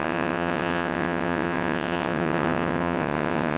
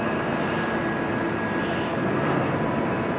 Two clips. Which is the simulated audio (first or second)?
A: first